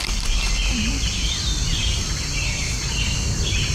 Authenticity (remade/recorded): recorded